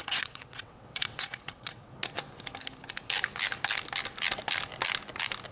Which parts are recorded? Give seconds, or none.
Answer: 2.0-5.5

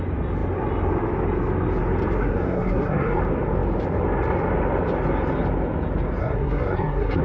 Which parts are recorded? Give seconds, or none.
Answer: 0.0-2.2; 3.2-6.2

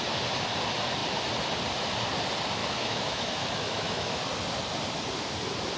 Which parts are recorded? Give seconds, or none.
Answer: 0.0-2.6; 4.2-5.8

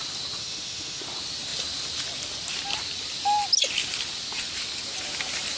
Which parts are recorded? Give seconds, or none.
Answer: 0.0-0.4; 1.0-5.6

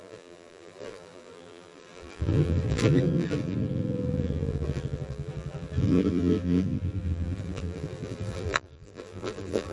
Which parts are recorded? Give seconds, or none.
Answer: none